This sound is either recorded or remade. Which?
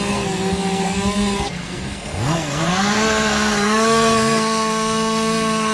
remade